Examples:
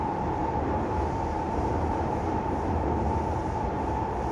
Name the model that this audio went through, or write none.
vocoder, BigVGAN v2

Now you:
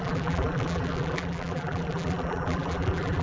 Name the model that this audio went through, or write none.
vocoder, BigVGAN v2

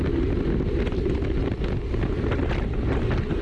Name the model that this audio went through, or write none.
none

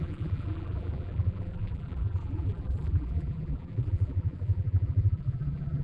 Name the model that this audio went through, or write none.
vocoder, BigVGAN v2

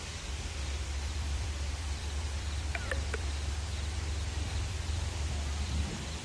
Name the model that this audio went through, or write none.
vocoder, BigVGAN v2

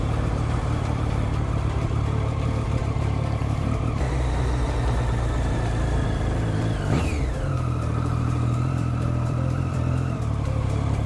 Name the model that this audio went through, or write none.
vocoder, BigVGAN v2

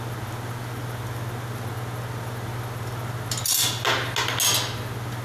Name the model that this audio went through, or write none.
none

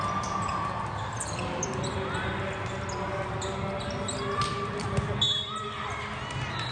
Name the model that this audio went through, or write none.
none